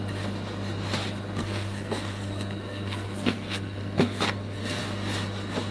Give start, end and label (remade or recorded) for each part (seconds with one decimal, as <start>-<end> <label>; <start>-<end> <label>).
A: 0.0-1.4 recorded; 1.4-4.8 remade; 4.8-5.7 recorded